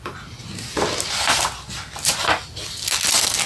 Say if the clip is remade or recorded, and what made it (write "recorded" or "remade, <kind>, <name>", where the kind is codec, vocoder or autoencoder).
recorded